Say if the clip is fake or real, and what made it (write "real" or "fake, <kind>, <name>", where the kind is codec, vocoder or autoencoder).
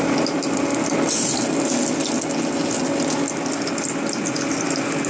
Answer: real